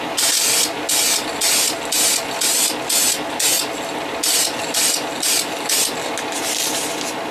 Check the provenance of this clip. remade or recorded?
recorded